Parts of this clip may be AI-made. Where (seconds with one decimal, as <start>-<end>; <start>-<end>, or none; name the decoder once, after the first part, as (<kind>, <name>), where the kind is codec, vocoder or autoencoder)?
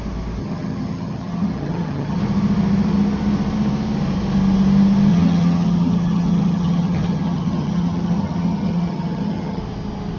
0.4-2.2 (vocoder, HiFi-GAN); 5.1-9.6